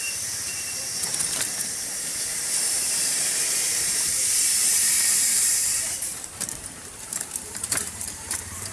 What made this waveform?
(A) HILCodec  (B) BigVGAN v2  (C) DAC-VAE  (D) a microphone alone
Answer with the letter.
B